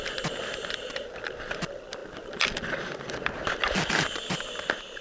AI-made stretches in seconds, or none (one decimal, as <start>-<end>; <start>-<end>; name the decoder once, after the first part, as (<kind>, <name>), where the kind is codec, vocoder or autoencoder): none